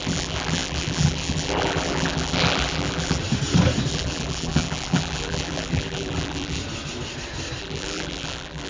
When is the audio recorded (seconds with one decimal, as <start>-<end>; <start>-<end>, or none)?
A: 3.2-3.9; 6.6-7.6